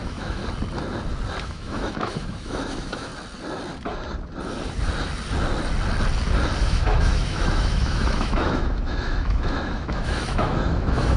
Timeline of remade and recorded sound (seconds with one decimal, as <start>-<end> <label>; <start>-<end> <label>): 0.0-0.4 remade; 0.4-1.4 recorded; 1.4-3.1 remade; 3.1-6.6 recorded; 6.6-11.2 remade